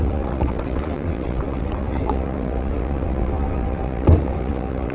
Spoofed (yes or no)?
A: yes